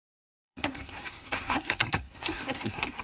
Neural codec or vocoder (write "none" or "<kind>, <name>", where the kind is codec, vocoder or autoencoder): codec, SNAC